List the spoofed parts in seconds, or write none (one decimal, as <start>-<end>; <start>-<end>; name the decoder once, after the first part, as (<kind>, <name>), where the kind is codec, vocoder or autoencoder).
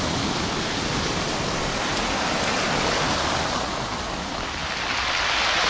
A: none